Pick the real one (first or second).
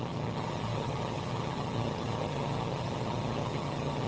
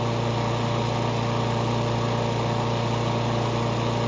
second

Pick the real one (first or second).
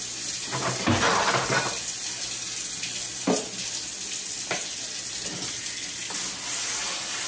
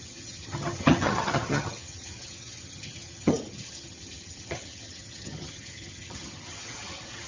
first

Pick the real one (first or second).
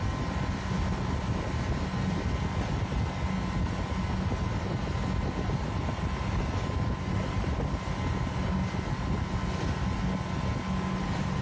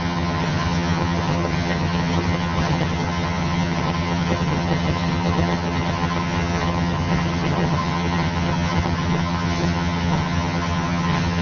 first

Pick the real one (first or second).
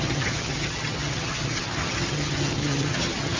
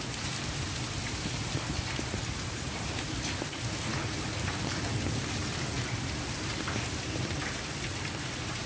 second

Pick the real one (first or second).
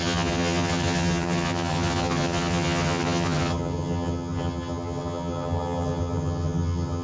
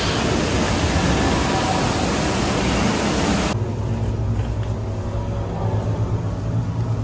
second